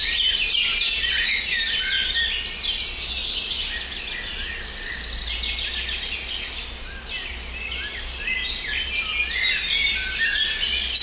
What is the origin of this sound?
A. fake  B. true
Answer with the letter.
B